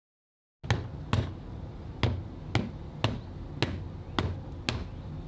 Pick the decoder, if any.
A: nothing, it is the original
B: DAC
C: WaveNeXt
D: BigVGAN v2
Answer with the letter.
A